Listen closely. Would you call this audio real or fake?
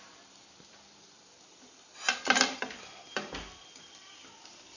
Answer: fake